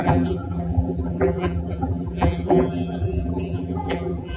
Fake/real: fake